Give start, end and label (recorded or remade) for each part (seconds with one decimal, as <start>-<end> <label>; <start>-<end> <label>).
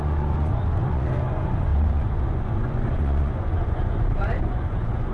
0.0-5.1 remade